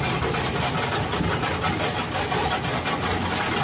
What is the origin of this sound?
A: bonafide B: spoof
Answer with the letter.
A